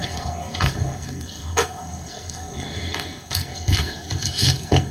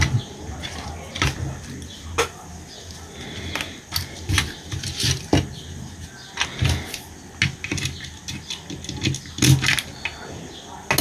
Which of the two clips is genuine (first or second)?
second